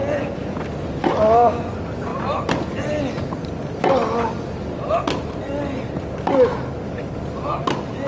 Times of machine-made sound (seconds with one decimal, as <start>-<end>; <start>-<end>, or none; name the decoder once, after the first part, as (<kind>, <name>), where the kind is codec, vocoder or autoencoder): 0.0-0.6 (vocoder, Vocos)